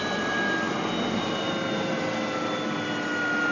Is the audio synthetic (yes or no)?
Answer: no